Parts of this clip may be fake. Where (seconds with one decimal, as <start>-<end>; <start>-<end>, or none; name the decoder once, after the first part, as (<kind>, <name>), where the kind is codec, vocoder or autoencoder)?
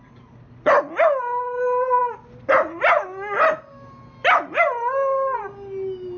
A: none